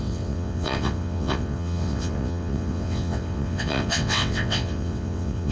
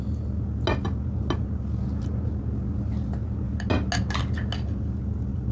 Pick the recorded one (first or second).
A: second